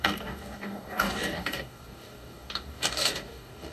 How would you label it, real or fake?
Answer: fake